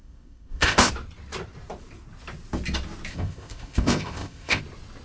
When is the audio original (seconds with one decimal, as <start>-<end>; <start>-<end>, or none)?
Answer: 0.9-3.1; 4.6-5.0

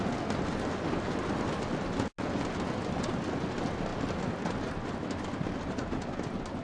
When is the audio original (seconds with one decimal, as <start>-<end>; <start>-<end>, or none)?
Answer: 0.0-6.6

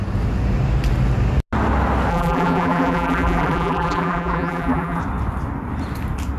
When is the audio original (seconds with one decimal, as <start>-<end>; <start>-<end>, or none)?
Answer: 0.0-2.1; 5.0-6.4

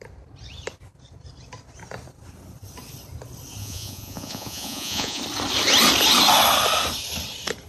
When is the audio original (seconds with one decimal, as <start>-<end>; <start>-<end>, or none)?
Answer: 0.0-3.6; 5.2-7.7

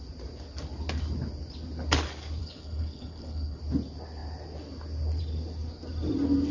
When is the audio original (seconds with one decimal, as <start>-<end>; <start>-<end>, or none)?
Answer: 0.0-2.4; 3.6-6.5